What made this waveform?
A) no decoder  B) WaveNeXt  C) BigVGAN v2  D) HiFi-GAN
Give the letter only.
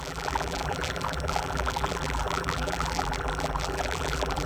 C